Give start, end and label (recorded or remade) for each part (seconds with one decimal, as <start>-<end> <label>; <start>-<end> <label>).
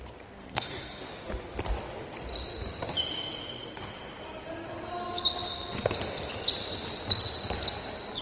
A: 0.0-0.4 recorded; 0.4-1.0 remade; 1.0-8.2 recorded